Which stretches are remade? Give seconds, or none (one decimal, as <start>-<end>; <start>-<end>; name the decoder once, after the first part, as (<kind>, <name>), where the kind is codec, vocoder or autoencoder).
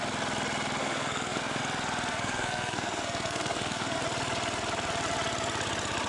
0.8-1.6 (codec, SNAC); 2.1-4.0